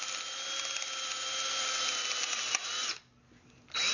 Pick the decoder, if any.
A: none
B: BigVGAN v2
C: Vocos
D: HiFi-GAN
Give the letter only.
A